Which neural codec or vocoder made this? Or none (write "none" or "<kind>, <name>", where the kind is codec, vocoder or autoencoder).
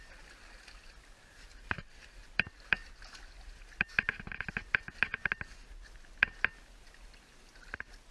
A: none